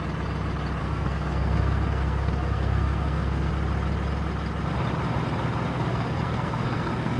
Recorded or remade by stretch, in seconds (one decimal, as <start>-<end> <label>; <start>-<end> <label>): 0.0-0.8 recorded; 0.8-3.5 remade; 3.5-5.7 recorded; 5.7-7.2 remade